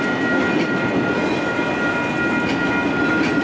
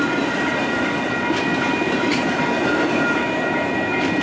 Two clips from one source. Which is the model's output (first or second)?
second